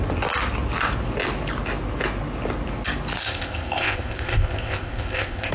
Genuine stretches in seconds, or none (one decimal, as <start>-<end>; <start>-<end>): 0.0-3.2